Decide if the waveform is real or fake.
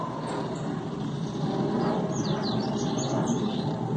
real